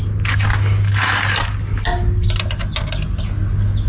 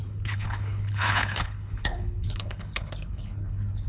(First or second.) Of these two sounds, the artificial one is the second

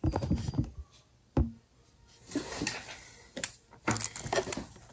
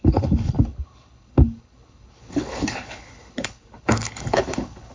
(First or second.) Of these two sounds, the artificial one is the second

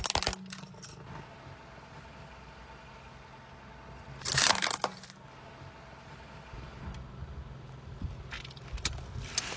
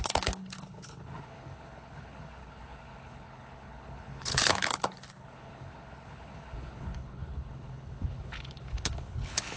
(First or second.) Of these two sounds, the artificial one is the second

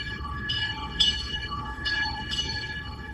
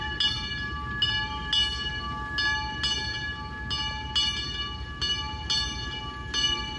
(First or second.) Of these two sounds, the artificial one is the first